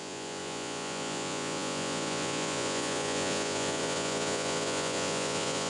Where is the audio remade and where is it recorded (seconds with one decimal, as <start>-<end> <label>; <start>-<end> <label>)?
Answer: 0.0-5.7 remade